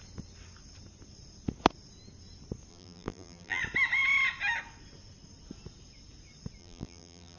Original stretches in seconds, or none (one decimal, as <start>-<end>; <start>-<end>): 0.0-2.7; 3.6-6.6